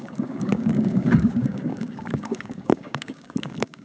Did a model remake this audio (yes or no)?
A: yes